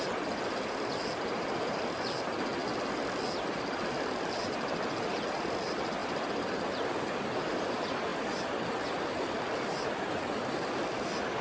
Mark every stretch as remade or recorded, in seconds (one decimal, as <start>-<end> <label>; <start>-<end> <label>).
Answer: 0.0-11.4 recorded